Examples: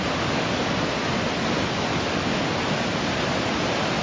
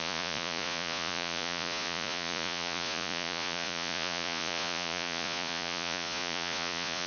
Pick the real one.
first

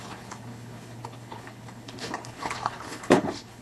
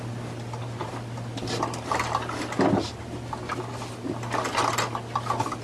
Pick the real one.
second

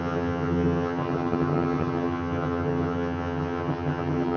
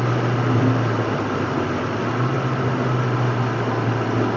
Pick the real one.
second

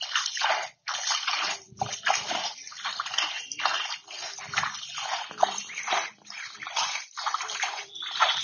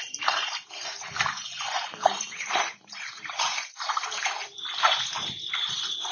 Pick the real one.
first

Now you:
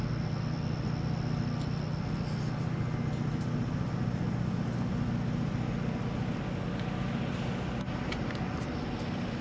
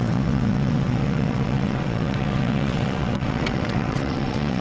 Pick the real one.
first